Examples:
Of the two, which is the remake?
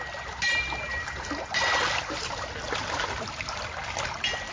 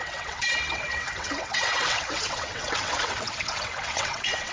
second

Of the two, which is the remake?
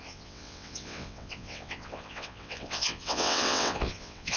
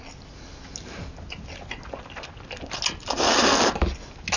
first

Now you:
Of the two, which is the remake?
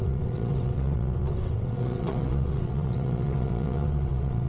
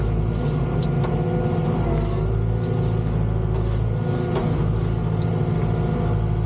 first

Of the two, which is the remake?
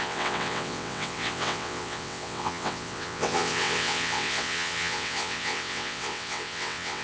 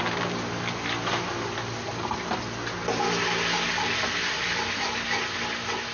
first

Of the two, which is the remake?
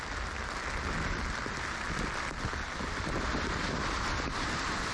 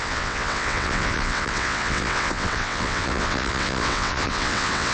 second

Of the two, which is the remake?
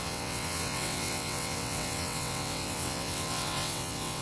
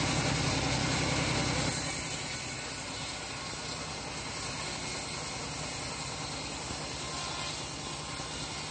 first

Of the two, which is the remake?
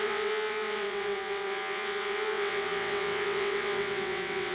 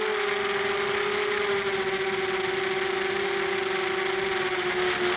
first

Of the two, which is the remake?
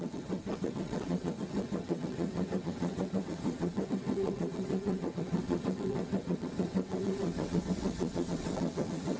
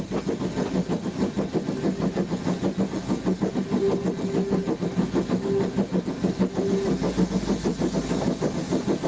first